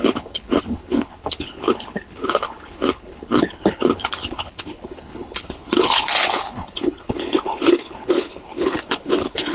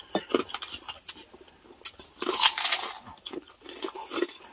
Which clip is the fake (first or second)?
first